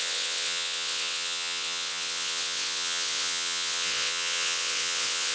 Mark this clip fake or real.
fake